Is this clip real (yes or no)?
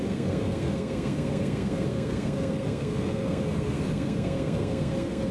no